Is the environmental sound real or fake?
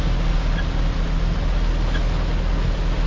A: real